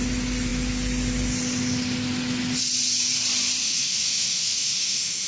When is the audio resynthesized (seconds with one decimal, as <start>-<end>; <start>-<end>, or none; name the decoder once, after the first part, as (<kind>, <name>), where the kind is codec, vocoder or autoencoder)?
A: 3.6-5.3 (autoencoder, DAC-VAE)